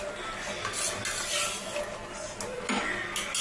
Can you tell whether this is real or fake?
real